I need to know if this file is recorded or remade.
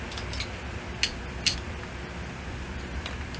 recorded